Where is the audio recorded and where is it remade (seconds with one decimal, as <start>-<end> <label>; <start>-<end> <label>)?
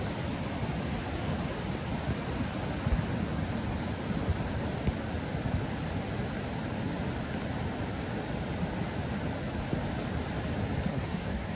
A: 0.0-10.9 recorded; 10.9-11.6 remade